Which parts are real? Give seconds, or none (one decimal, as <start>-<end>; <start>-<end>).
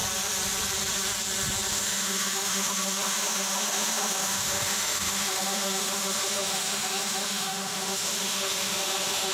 0.0-1.7